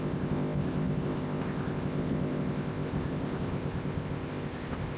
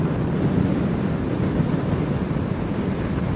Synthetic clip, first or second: first